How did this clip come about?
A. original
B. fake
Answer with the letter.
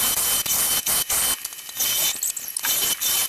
A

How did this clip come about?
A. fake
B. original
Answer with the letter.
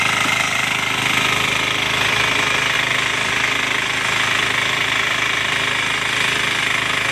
B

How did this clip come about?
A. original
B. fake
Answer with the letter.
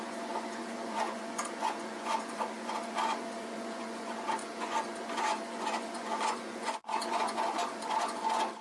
B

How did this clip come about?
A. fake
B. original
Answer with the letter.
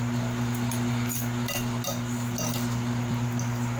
B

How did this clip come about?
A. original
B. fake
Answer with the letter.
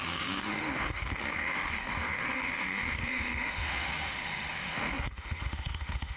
B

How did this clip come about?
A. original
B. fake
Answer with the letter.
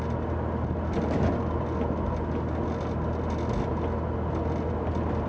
A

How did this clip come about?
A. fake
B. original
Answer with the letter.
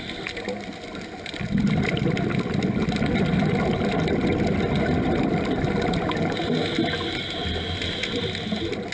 B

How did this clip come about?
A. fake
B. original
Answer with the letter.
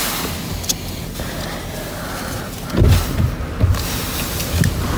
B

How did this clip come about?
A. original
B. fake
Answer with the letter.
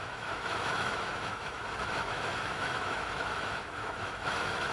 B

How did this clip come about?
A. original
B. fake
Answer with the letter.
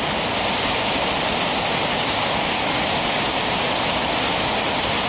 B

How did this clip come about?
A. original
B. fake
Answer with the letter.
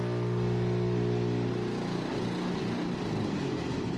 A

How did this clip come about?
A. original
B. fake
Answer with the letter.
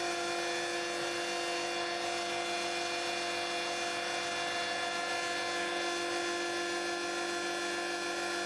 A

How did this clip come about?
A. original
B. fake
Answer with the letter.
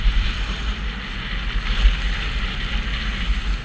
A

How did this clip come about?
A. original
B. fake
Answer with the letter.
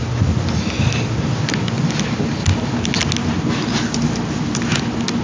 A